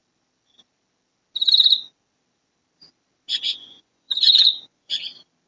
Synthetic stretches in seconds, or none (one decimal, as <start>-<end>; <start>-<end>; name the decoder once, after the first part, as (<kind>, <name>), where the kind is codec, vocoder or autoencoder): 3.3-5.0 (vocoder, Vocos)